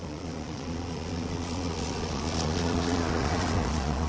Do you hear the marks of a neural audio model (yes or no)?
yes